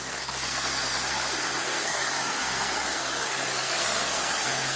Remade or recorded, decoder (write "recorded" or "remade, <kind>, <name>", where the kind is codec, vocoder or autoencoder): remade, codec, SNAC